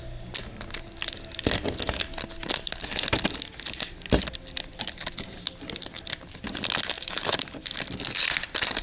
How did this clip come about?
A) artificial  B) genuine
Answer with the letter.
B